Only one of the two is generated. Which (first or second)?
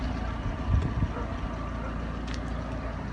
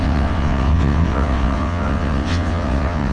second